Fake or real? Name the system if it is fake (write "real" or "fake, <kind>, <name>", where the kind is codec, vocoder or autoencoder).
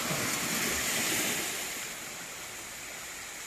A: real